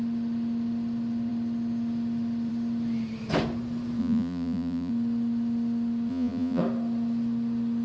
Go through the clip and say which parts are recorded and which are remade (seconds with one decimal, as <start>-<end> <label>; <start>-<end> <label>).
0.0-4.0 recorded; 4.0-4.9 remade; 4.9-6.1 recorded; 6.1-6.6 remade; 6.6-7.8 recorded